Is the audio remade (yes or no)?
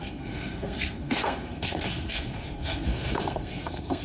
yes